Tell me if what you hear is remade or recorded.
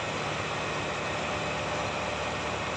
recorded